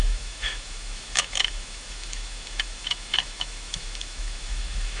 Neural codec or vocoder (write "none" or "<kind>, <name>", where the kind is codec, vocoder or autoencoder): autoencoder, DAC-VAE